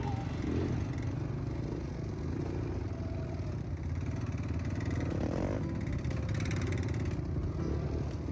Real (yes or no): yes